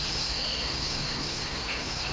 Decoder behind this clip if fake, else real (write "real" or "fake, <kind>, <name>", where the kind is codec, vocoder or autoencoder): fake, codec, SNAC